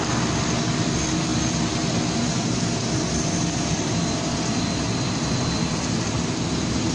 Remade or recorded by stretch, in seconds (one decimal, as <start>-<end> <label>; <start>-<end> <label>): 0.0-6.9 recorded